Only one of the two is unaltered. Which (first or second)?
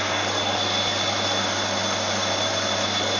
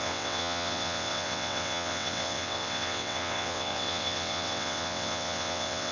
first